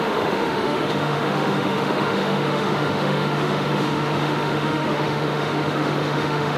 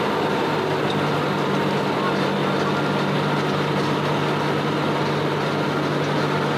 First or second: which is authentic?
second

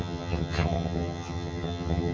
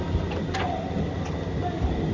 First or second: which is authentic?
second